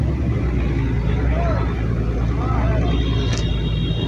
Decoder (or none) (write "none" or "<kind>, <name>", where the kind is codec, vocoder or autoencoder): none